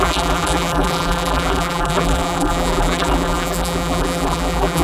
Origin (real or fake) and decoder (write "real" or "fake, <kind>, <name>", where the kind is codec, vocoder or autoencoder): fake, vocoder, BigVGAN v2